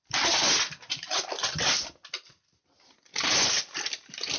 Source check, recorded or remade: recorded